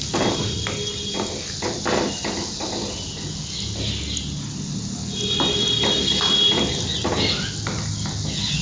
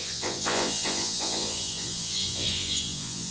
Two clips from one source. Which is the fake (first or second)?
second